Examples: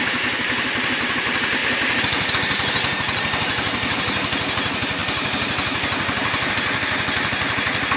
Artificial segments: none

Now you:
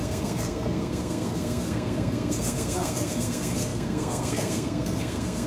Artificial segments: 0.0-5.5 (codec, SNAC)

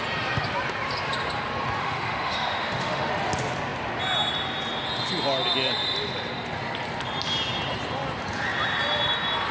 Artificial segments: 1.8-3.1 (autoencoder, DAC-VAE)

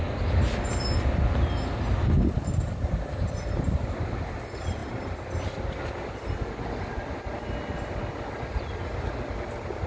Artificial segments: none

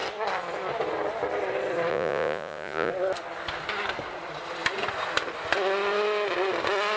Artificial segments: 1.9-2.9 (vocoder, Vocos)